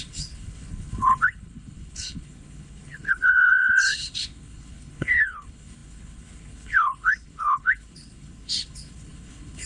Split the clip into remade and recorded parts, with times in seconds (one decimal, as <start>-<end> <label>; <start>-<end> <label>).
0.0-9.7 remade